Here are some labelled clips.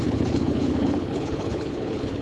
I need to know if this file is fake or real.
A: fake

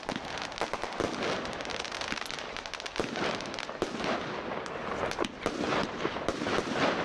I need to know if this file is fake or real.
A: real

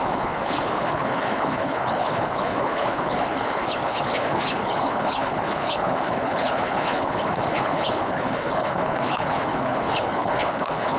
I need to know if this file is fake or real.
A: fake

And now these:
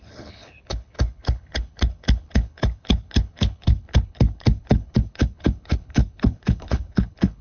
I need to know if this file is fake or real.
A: fake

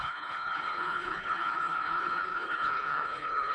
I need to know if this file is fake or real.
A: fake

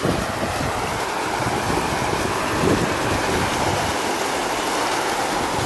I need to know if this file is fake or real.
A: real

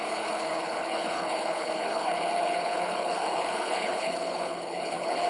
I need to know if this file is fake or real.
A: fake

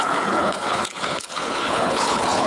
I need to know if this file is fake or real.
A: fake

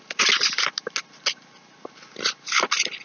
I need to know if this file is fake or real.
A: real